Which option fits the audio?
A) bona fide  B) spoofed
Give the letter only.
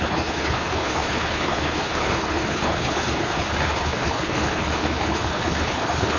B